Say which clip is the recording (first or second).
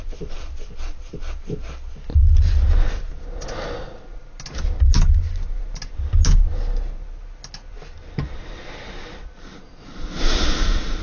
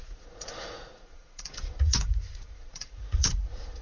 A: first